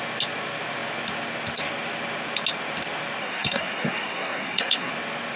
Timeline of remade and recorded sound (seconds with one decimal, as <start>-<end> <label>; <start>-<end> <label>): 0.0-3.2 recorded; 3.2-4.9 remade; 4.9-5.4 recorded